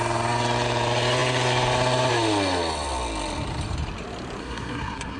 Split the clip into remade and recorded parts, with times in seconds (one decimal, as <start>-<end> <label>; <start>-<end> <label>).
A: 0.0-4.4 recorded; 4.4-5.2 remade

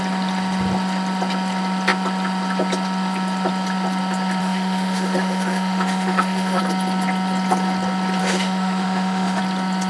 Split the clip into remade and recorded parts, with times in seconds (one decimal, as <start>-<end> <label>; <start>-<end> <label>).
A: 0.0-4.4 recorded; 4.4-6.6 remade; 6.6-8.2 recorded; 8.2-9.4 remade; 9.4-9.9 recorded

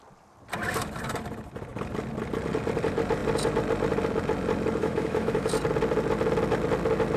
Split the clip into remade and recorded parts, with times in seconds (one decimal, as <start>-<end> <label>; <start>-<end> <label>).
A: 0.0-4.8 recorded; 4.8-5.5 remade; 5.5-7.2 recorded